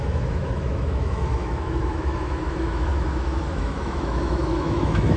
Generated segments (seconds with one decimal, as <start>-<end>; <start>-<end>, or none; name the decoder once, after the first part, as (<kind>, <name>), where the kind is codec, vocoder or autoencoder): 0.0-5.2 (autoencoder, DAC-VAE)